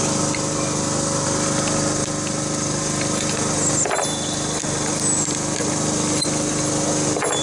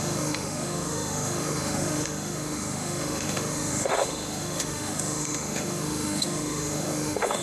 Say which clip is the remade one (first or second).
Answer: second